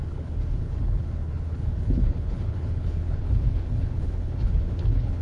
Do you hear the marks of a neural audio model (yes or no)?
yes